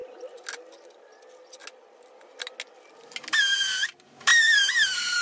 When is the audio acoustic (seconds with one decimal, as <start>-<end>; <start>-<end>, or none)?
0.0-4.3